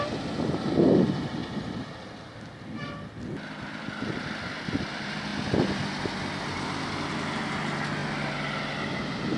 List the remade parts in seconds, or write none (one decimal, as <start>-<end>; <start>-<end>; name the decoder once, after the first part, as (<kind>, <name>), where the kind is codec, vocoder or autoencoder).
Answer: none